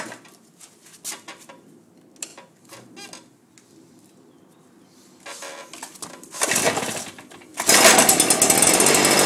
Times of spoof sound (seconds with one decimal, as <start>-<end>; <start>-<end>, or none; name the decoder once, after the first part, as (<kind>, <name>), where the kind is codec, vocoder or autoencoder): none